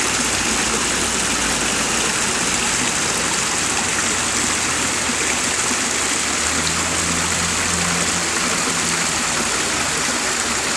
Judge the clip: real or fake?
real